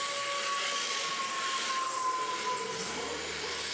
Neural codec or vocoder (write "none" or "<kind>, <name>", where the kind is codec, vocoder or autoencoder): none